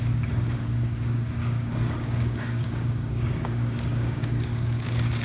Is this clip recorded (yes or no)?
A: no